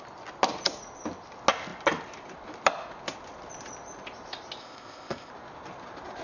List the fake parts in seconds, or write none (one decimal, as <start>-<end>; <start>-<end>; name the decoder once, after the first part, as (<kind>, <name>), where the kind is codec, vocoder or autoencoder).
4.6-5.3 (codec, ZipCodec)